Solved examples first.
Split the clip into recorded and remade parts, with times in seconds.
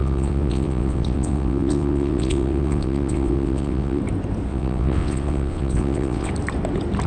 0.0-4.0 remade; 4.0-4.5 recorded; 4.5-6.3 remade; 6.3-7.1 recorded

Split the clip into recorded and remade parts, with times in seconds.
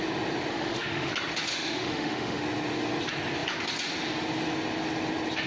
0.0-0.5 recorded; 0.5-1.1 remade; 1.1-1.5 recorded; 1.5-2.4 remade; 2.4-5.5 recorded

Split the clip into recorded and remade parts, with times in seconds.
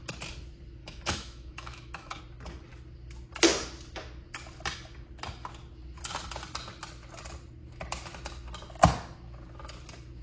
0.0-0.8 recorded; 0.8-2.2 remade; 2.2-10.2 recorded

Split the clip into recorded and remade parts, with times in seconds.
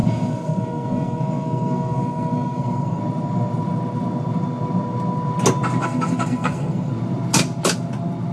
0.0-3.0 remade; 3.0-5.8 recorded; 5.8-6.9 remade; 6.9-8.3 recorded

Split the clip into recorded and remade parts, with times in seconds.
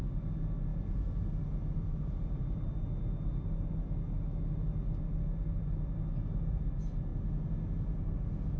0.0-8.6 recorded